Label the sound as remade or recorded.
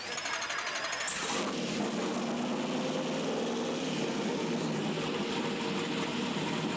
recorded